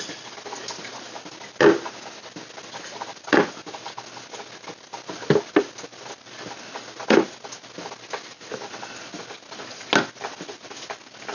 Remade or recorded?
recorded